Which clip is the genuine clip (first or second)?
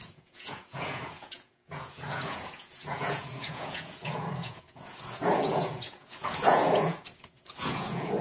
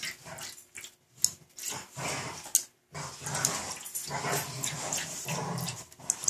second